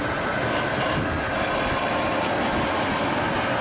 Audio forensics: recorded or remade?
recorded